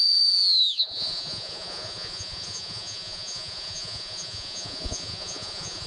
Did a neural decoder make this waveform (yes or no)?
yes